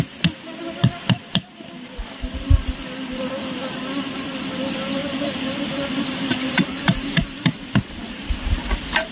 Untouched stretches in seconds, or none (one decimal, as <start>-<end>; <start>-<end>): 0.0-5.0; 6.5-9.1